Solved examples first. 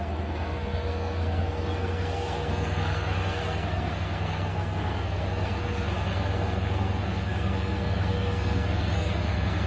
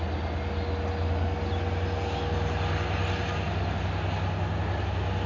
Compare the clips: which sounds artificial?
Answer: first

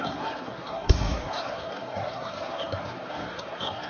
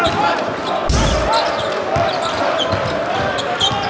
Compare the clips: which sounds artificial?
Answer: first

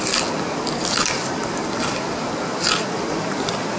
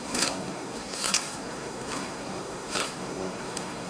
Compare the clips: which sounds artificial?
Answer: second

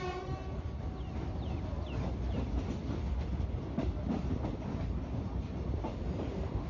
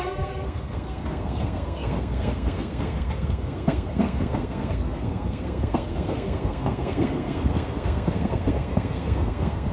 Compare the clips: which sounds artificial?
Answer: second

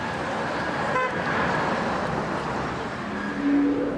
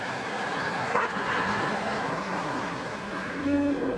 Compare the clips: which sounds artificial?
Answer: second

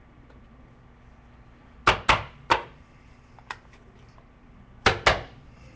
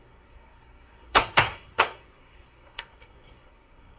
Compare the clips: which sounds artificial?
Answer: second